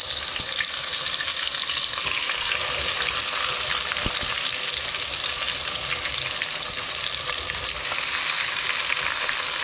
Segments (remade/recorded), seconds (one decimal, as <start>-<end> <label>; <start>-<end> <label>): 0.0-9.6 recorded